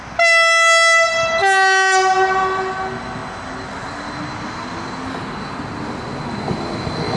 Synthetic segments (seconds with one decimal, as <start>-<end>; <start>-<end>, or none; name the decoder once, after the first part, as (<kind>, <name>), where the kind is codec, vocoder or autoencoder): none